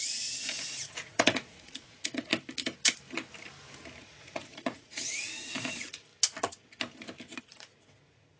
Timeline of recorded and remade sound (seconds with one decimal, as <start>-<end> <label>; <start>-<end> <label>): 0.0-2.3 remade; 2.3-4.0 recorded; 4.0-6.1 remade; 6.1-7.4 recorded; 7.4-8.4 remade